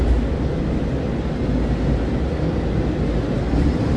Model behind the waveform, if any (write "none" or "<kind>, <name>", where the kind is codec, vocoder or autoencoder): none